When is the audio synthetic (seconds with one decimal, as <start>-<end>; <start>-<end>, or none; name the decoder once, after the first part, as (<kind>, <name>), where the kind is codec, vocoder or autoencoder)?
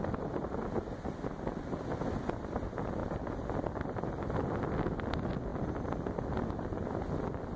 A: none